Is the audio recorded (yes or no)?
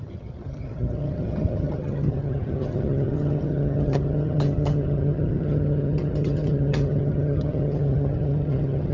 no